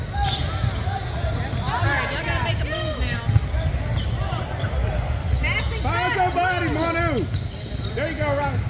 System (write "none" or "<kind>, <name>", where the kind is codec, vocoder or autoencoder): none